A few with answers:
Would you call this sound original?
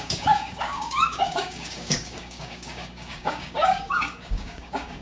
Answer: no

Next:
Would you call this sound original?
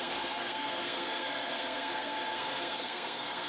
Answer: no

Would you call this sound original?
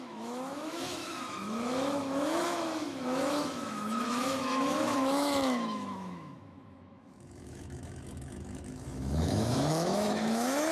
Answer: no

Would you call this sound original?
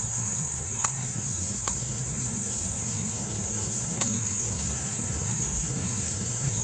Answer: no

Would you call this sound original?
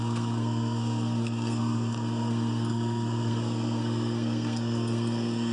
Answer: no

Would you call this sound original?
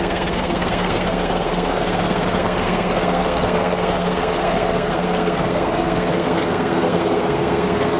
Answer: no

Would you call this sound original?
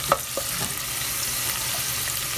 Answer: yes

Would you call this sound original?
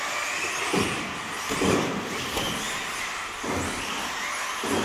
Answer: yes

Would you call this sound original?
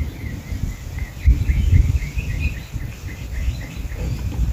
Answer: yes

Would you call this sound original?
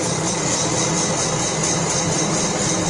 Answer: yes